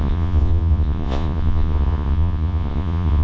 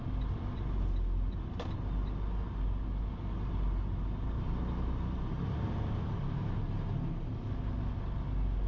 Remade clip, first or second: first